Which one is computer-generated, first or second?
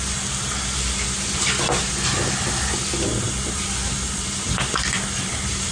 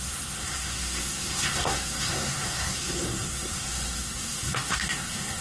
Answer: second